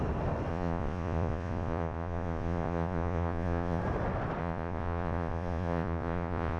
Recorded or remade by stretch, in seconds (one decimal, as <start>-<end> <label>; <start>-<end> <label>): 0.0-0.5 recorded; 0.5-3.8 remade; 3.8-4.4 recorded; 4.4-6.6 remade